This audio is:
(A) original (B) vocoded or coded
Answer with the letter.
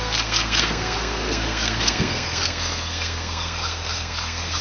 B